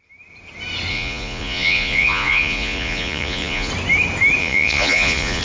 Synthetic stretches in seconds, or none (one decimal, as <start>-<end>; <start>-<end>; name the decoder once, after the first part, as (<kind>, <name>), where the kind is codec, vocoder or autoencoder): 0.9-3.7 (vocoder, Vocos); 4.4-5.4